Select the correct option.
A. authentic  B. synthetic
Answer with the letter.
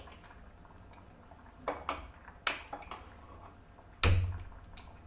A